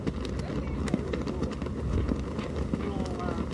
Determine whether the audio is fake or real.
real